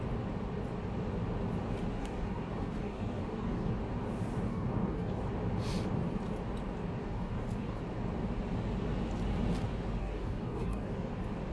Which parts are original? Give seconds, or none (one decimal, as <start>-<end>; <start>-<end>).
0.0-2.0; 3.7-4.5; 5.2-7.0; 7.8-10.0; 11.1-11.5